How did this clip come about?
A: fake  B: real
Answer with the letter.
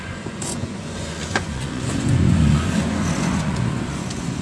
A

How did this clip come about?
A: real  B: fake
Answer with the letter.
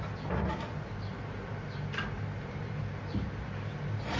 A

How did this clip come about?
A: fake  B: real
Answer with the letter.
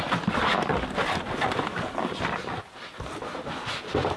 B